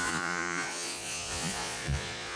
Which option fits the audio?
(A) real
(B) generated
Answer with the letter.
B